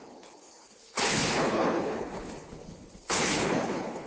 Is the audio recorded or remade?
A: remade